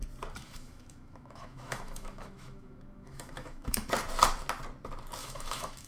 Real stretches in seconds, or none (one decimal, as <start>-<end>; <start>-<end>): 0.0-0.4; 3.9-5.2